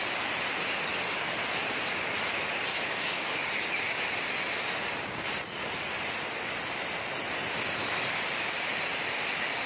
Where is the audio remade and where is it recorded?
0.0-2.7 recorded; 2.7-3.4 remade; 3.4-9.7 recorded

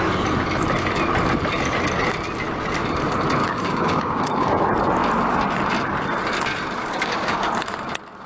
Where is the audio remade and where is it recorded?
0.0-3.4 recorded; 3.4-4.5 remade; 4.5-6.8 recorded; 6.8-7.5 remade; 7.5-8.3 recorded

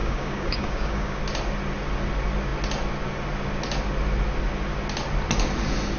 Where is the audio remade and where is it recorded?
0.0-1.2 remade; 1.2-6.0 recorded

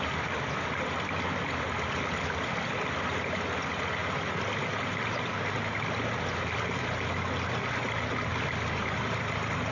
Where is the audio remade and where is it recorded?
0.0-9.7 recorded

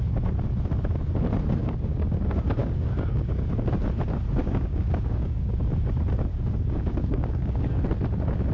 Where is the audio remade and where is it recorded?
0.0-1.6 recorded; 1.6-2.2 remade; 2.2-2.6 recorded; 2.6-3.5 remade; 3.5-4.4 recorded; 4.4-5.5 remade; 5.5-6.3 recorded; 6.3-7.6 remade; 7.6-8.5 recorded

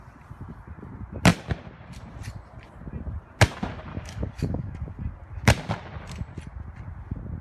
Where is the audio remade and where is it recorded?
0.0-3.9 recorded; 3.9-4.9 remade; 4.9-7.4 recorded